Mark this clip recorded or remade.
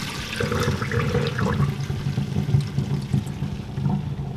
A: recorded